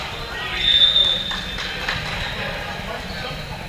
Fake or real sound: fake